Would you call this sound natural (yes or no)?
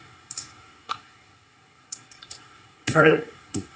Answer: no